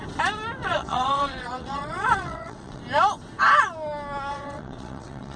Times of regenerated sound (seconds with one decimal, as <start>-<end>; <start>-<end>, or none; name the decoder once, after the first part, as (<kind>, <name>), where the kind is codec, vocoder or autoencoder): 0.6-2.8 (vocoder, WaveNeXt); 4.3-5.4